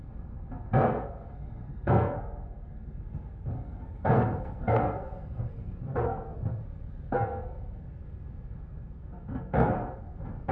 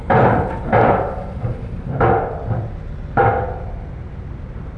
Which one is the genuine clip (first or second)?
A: second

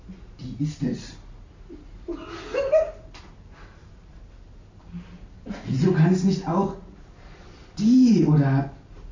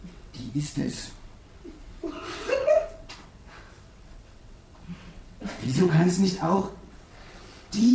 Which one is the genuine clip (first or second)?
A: first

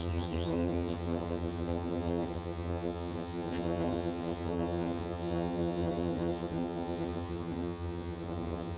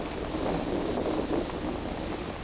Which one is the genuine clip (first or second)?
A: second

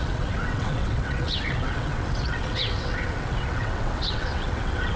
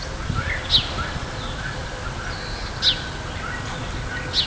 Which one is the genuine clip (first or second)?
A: second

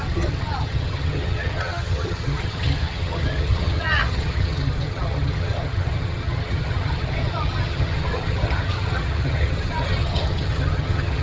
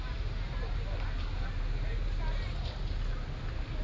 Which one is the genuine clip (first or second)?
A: second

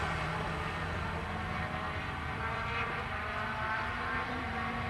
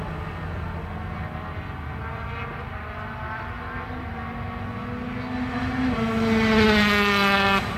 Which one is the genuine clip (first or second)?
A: second